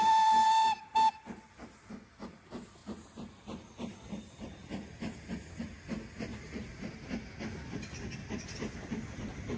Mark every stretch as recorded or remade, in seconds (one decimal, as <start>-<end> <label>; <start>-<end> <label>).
0.0-6.3 recorded; 6.3-6.9 remade; 6.9-9.6 recorded